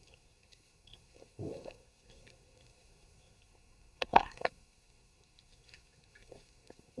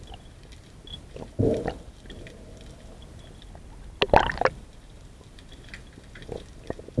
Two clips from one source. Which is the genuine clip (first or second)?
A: second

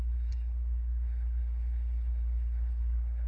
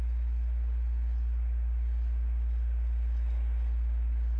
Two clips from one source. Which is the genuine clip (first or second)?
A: second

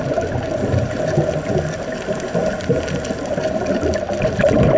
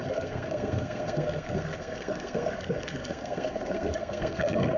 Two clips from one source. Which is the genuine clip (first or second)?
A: first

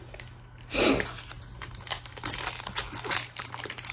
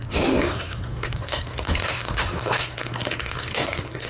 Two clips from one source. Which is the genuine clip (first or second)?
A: first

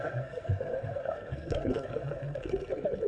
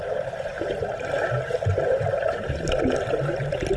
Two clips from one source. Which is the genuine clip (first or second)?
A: second